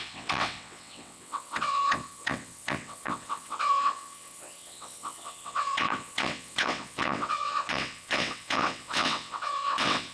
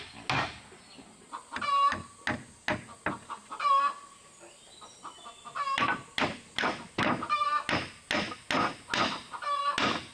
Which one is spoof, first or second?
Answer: first